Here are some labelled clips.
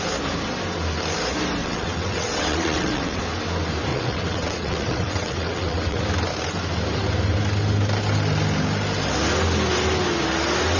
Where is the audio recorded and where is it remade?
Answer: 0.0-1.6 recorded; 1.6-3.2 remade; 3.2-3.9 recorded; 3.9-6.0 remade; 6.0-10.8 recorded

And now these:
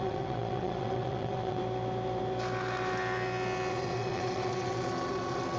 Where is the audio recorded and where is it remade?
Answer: 0.0-1.6 remade; 1.6-3.7 recorded; 3.7-5.6 remade

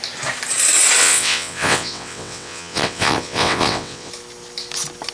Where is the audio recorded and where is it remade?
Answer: 0.0-1.0 recorded; 1.0-4.1 remade; 4.1-5.1 recorded

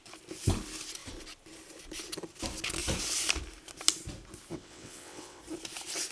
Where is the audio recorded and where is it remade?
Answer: 0.0-4.5 recorded; 4.5-5.4 remade; 5.4-6.1 recorded

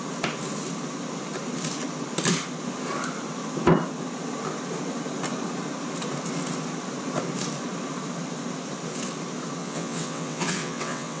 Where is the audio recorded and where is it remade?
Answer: 0.0-9.6 recorded; 9.6-11.2 remade

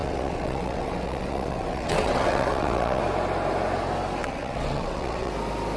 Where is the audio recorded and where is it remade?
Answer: 0.0-3.0 remade; 3.0-4.2 recorded; 4.2-5.3 remade; 5.3-5.8 recorded

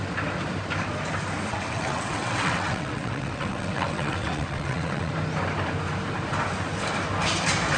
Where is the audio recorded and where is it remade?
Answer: 0.0-1.5 recorded; 1.5-5.1 remade; 5.1-7.8 recorded